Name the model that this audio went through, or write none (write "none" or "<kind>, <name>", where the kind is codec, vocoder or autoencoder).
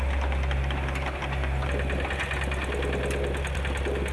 none